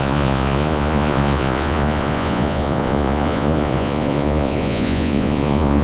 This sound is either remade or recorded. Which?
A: remade